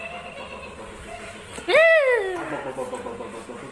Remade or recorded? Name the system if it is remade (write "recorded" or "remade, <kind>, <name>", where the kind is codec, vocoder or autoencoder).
recorded